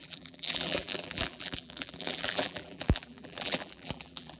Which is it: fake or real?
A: fake